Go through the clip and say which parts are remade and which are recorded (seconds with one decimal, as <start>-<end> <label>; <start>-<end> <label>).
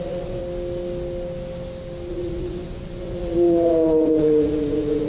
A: 0.0-0.4 remade; 0.4-2.1 recorded; 2.1-5.1 remade